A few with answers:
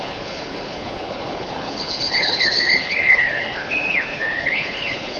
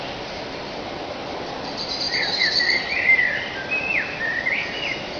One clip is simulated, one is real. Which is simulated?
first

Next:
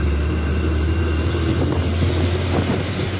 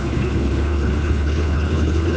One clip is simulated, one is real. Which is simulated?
second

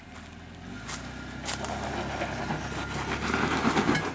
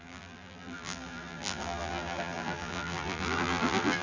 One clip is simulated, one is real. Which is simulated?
second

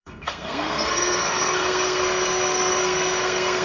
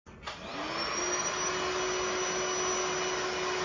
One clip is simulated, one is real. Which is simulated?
first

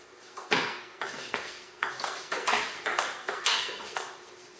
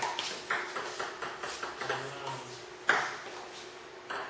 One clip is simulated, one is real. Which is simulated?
first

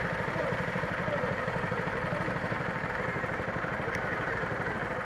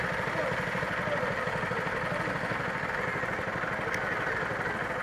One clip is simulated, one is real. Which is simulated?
first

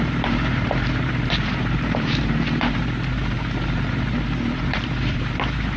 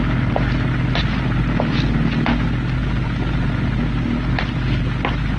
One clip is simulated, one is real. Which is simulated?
first